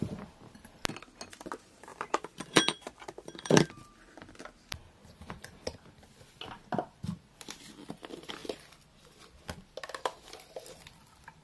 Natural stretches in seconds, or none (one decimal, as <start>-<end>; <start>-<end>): 0.0-1.9; 4.3-4.8; 5.6-11.4